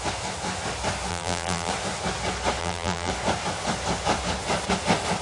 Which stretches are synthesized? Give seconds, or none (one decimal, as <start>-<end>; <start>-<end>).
1.1-1.7; 2.6-3.1

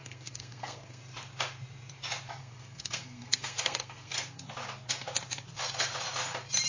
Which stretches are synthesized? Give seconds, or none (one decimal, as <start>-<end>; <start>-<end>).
0.0-1.0; 2.4-4.4